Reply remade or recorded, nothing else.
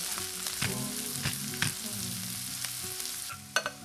recorded